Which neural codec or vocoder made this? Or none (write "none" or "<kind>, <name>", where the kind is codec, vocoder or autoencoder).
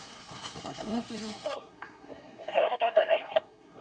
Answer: codec, SNAC